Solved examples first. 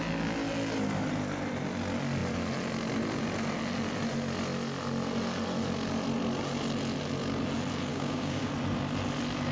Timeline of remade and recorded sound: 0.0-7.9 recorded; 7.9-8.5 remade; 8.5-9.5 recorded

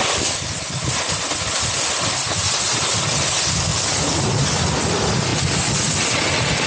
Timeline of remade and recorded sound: 0.0-3.7 recorded; 3.7-4.5 remade; 4.5-6.7 recorded

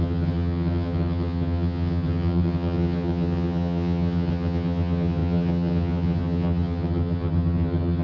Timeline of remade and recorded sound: 0.0-8.0 remade

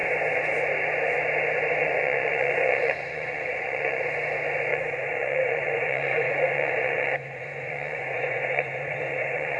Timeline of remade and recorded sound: 0.0-1.8 recorded; 1.8-4.0 remade; 4.0-4.7 recorded; 4.7-9.6 remade